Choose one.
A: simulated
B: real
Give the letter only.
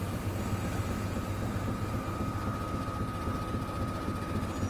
B